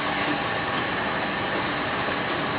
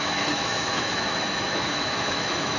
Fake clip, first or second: second